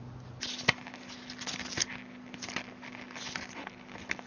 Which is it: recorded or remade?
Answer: recorded